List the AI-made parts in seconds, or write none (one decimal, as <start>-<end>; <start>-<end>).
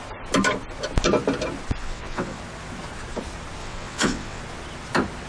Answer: 1.8-2.4; 3.6-4.4